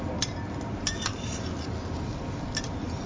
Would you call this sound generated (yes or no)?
no